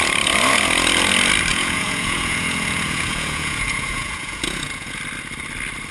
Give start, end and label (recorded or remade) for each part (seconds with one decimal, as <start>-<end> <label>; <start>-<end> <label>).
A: 0.0-1.5 recorded; 1.5-5.0 remade; 5.0-5.9 recorded